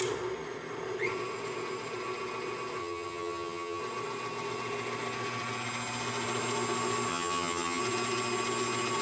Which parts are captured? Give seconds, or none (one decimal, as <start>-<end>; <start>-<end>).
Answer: 0.0-2.8; 3.8-7.1; 7.8-9.0